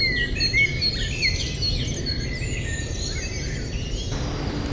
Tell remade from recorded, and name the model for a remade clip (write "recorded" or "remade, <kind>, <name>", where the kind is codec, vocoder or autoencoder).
recorded